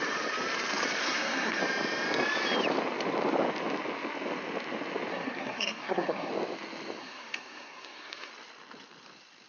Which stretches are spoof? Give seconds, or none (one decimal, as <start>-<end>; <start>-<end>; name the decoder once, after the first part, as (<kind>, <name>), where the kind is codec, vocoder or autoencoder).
1.0-1.6 (codec, SNAC); 5.1-6.3; 7.0-8.3